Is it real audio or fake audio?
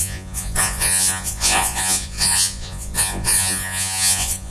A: fake